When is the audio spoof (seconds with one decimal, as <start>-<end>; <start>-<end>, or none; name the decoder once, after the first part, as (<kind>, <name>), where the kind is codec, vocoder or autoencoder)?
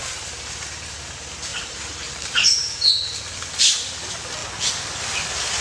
1.5-3.2 (vocoder, BigVGAN v2)